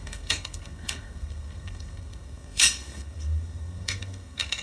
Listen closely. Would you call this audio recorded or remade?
remade